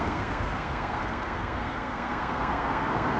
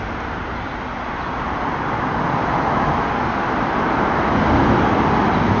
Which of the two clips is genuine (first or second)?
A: second